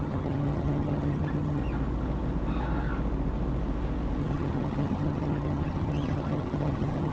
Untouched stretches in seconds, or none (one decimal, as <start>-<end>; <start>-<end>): 1.6-4.2